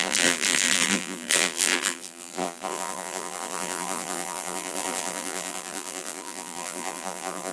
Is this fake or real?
fake